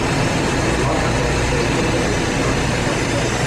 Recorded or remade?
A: recorded